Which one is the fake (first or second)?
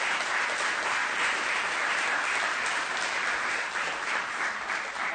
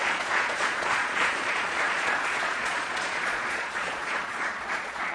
second